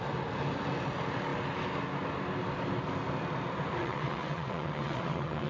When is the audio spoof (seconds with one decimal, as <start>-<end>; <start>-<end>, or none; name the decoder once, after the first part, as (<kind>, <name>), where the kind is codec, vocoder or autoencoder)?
3.8-5.5 (vocoder, WaveNeXt)